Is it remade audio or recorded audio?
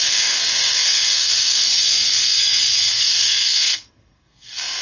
remade